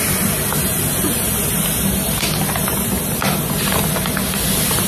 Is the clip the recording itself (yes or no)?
yes